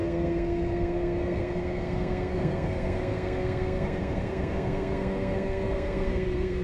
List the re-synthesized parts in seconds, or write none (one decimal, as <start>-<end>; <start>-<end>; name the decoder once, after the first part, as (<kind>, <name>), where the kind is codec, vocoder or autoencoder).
0.0-6.6 (codec, SNAC)